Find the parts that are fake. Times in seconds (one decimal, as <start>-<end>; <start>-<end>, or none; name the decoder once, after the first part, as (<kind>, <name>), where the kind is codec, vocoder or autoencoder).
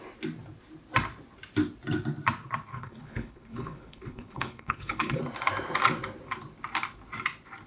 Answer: 2.7-5.2 (codec, HILCodec)